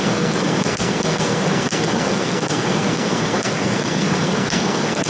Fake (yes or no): yes